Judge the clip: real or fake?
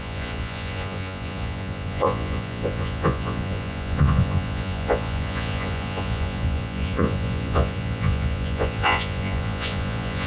fake